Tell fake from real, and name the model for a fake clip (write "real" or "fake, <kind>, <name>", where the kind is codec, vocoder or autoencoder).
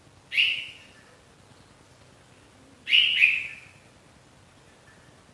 real